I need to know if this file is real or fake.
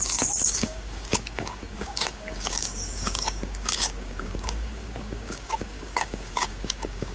fake